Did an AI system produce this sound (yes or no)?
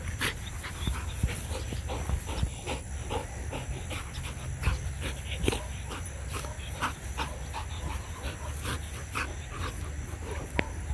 no